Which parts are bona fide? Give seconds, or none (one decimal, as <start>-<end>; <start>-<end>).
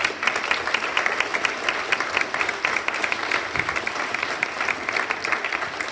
0.0-1.3; 4.8-5.9